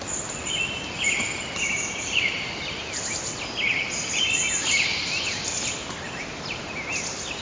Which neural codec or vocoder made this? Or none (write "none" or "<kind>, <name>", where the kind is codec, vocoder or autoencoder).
vocoder, BigVGAN v2